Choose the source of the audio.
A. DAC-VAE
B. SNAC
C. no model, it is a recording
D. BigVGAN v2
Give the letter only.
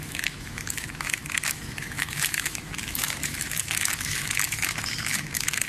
A